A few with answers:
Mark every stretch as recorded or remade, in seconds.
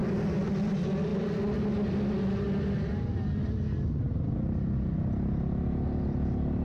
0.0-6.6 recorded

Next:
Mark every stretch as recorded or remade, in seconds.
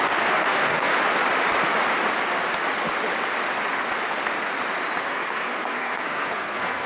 0.0-0.9 remade; 0.9-5.0 recorded; 5.0-6.9 remade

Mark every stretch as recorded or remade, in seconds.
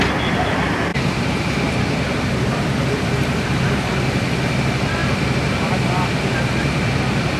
0.0-7.4 remade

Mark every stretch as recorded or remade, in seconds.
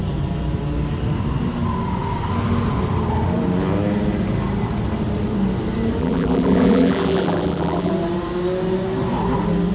0.0-6.0 recorded; 6.0-7.9 remade; 7.9-9.7 recorded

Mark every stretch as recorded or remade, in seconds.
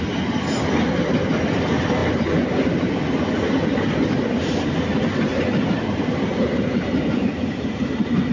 0.0-8.3 recorded